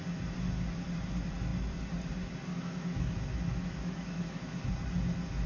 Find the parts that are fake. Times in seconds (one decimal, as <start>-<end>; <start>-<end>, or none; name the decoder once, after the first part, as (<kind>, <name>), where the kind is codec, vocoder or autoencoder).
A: 2.5-4.7 (autoencoder, DAC-VAE)